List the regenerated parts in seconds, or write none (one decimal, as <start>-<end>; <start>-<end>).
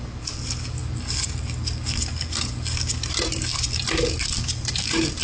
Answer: none